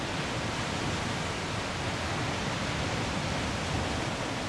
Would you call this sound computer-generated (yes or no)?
no